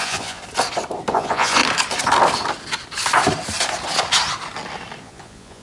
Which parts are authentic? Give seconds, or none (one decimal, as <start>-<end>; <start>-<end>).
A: 0.4-1.1; 1.6-5.0